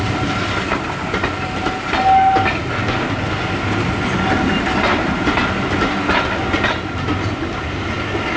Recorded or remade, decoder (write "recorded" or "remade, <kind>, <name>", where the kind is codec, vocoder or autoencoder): recorded